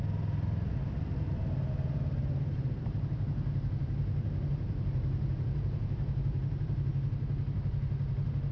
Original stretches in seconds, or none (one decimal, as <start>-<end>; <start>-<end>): 0.0-2.2; 6.9-8.5